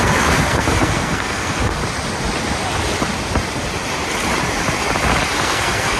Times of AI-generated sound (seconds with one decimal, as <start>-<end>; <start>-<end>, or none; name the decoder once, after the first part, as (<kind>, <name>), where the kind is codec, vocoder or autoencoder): 0.0-1.8 (codec, SNAC); 5.4-6.0